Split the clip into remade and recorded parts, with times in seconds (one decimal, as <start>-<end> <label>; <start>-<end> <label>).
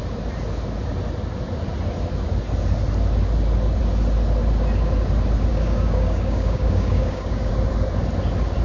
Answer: 0.0-5.5 recorded; 5.5-7.5 remade; 7.5-8.6 recorded